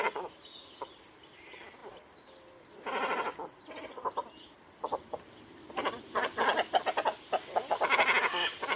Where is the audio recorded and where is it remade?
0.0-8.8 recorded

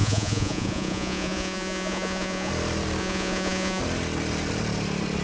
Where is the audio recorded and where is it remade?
0.0-2.5 remade; 2.5-3.0 recorded; 3.0-3.8 remade; 3.8-5.2 recorded

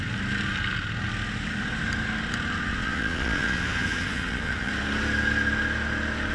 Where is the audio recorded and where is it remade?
0.0-2.7 recorded; 2.7-4.7 remade; 4.7-6.3 recorded

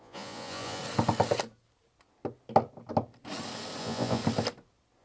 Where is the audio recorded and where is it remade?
0.0-0.8 remade; 0.8-3.8 recorded; 3.8-4.2 remade; 4.2-5.0 recorded